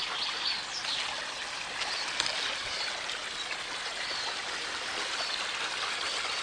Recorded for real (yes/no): yes